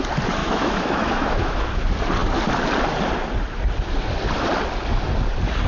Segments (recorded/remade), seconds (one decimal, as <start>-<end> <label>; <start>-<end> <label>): 0.0-0.4 recorded; 0.4-1.8 remade; 1.8-5.7 recorded